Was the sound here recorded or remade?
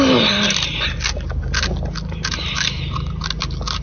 recorded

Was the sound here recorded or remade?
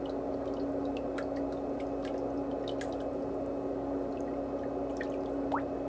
recorded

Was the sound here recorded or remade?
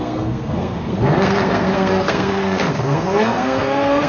remade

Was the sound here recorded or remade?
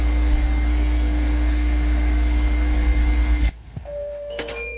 remade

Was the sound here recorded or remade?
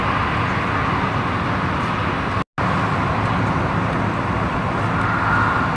recorded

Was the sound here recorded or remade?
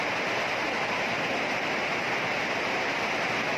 recorded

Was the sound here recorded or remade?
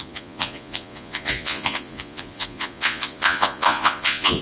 remade